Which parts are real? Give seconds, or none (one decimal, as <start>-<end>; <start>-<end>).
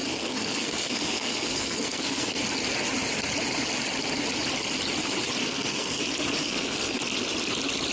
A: 2.4-5.4; 6.0-6.4; 7.0-7.9